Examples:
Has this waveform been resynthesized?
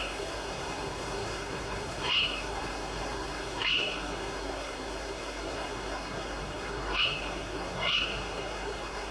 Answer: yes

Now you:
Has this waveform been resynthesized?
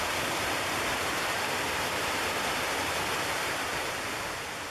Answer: yes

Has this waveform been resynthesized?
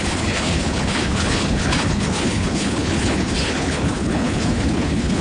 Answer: yes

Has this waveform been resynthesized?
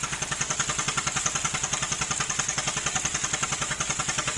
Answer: no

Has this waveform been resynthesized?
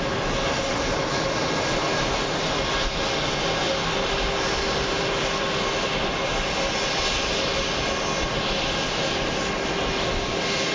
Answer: no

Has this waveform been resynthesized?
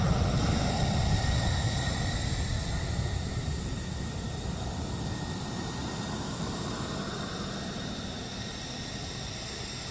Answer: no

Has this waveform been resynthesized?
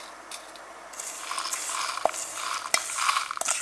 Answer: no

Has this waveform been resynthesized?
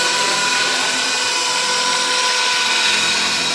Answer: no